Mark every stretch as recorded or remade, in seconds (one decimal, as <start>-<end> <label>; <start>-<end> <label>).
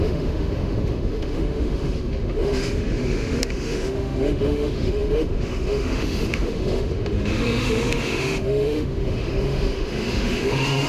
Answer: 0.0-10.9 remade